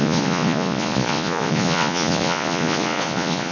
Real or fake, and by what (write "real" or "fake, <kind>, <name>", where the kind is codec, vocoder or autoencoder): fake, vocoder, Vocos